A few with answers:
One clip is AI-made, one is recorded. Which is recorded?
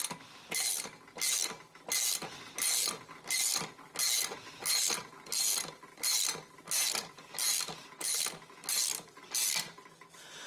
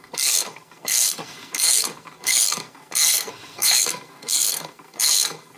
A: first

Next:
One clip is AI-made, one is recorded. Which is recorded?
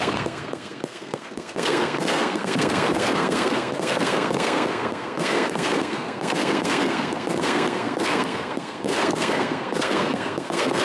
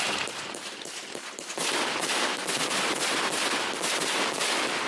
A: second